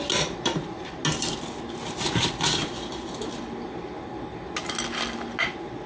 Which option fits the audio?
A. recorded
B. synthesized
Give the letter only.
A